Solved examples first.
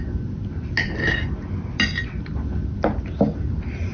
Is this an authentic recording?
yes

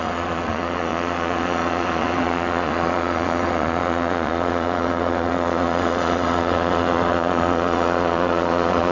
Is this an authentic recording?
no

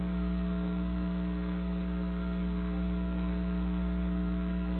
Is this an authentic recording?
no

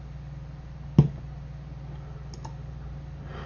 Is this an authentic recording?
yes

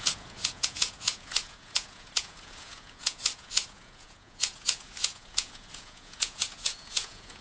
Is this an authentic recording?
no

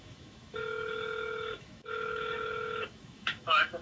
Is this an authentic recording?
no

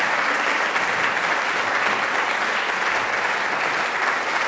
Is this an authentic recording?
yes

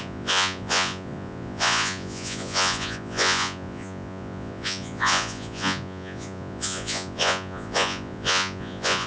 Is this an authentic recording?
no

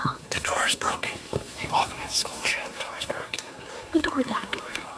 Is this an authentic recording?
no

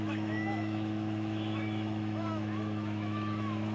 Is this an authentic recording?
no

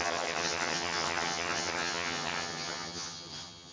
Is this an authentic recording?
no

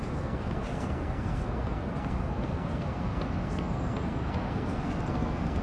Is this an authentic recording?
no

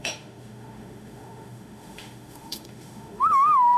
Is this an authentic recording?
no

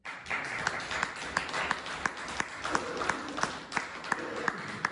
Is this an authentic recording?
yes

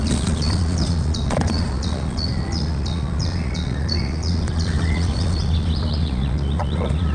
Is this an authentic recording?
no